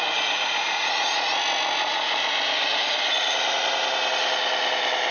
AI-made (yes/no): no